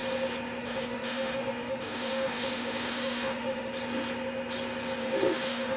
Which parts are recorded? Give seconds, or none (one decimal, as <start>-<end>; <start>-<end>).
0.0-0.6; 3.7-5.0

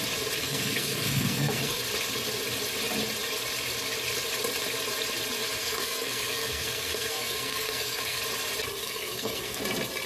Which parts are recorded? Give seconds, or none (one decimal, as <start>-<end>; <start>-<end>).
0.0-0.4; 1.8-5.6; 8.2-8.8; 9.6-10.1

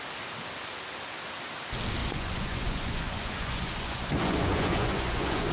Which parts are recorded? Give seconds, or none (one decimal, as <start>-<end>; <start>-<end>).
0.0-2.0

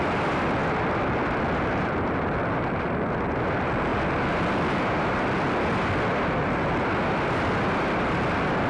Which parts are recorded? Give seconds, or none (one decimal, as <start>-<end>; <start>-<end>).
0.0-8.7

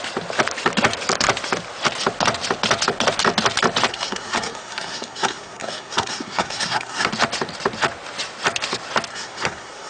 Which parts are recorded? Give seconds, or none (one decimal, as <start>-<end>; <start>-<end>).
0.0-3.9; 7.1-9.1

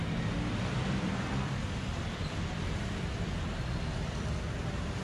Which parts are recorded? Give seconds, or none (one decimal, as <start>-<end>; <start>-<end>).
3.0-5.0

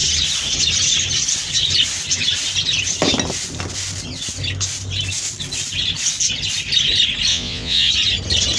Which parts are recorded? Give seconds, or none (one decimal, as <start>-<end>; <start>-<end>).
0.0-7.3; 7.9-8.6

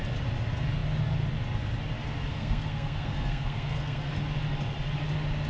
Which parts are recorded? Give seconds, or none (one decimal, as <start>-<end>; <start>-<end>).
0.0-2.3; 4.1-5.5